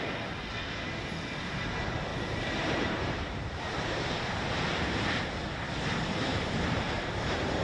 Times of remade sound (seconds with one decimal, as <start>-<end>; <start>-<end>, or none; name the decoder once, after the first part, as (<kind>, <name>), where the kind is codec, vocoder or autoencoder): 2.1-5.1 (vocoder, BigVGAN v2); 6.3-7.6